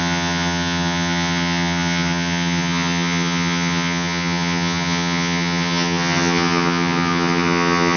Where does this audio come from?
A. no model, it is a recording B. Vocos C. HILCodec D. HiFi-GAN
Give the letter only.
D